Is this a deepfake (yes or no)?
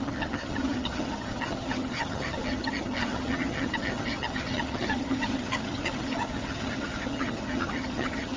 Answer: yes